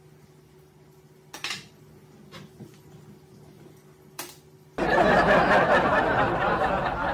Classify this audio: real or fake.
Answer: real